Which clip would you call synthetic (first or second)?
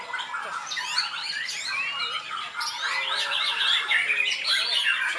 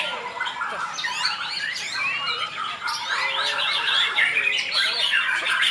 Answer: second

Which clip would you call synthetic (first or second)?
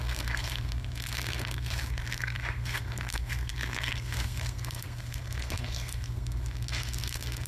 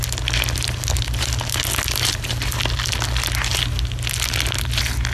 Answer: first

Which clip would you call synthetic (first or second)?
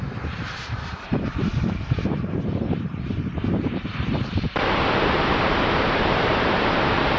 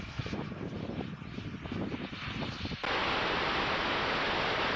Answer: first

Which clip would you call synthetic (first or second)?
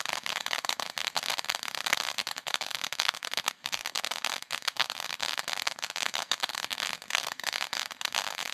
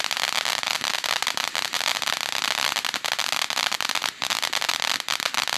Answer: first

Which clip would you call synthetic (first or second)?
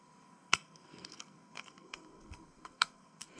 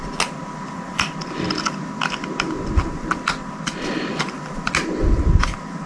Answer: first